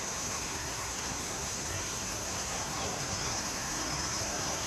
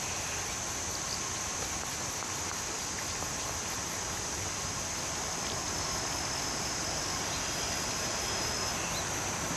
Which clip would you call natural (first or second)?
second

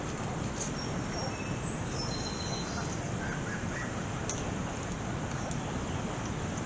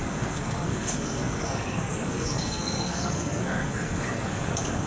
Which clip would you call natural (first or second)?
first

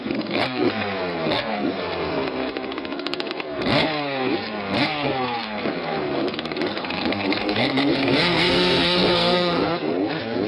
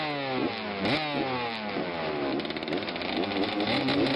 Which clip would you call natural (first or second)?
second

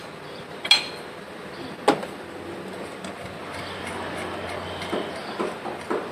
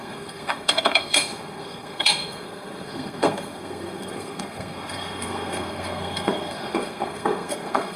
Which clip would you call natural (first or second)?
first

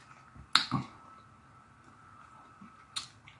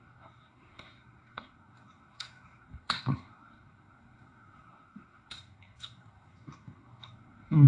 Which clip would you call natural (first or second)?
first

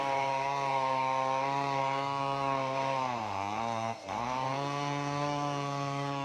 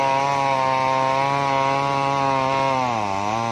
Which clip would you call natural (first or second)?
second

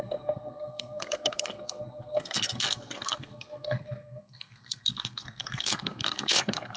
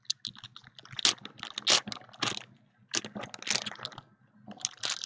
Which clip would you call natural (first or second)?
second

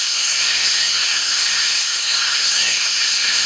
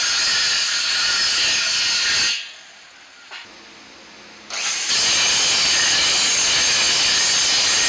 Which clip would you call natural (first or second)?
second